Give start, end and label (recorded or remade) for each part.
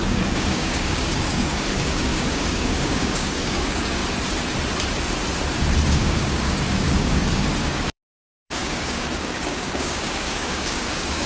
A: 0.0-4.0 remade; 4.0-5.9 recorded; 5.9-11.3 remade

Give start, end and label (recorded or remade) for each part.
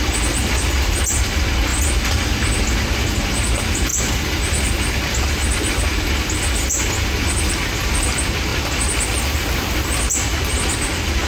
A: 0.0-11.3 recorded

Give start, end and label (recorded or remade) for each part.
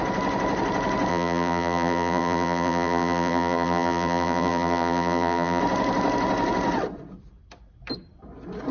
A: 0.0-1.1 recorded; 1.1-5.6 remade; 5.6-8.7 recorded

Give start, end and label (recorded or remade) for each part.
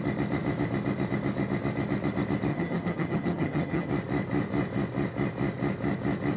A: 0.0-2.5 recorded; 2.5-3.9 remade; 3.9-6.4 recorded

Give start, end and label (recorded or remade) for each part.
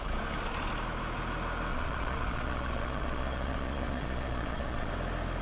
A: 0.0-1.7 recorded; 1.7-4.9 remade; 4.9-5.4 recorded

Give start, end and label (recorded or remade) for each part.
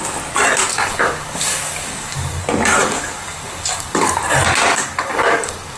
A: 0.0-0.7 recorded; 0.7-2.4 remade; 2.4-2.8 recorded; 2.8-4.2 remade; 4.2-4.7 recorded; 4.7-5.8 remade